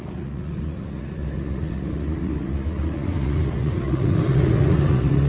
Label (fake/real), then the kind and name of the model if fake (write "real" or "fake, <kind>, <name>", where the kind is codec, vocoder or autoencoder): fake, vocoder, Vocos